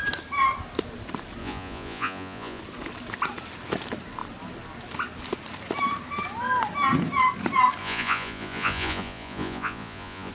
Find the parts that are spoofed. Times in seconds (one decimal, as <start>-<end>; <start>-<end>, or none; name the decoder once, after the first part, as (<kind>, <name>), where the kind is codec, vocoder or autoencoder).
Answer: 1.4-2.6 (vocoder, Vocos); 7.8-10.3